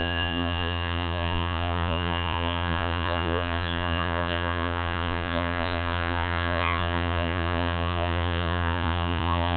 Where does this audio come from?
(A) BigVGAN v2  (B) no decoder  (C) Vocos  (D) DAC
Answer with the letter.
C